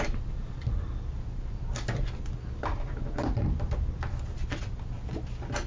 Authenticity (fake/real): real